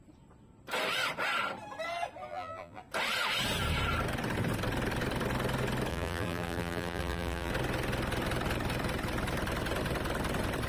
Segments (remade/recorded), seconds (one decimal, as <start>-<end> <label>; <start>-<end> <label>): 0.0-2.3 recorded; 2.3-2.8 remade; 2.8-5.9 recorded; 5.9-7.5 remade; 7.5-10.7 recorded